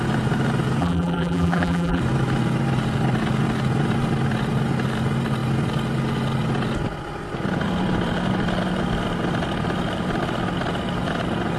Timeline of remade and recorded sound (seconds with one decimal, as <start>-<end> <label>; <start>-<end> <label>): 0.0-0.8 recorded; 0.8-2.0 remade; 2.0-11.6 recorded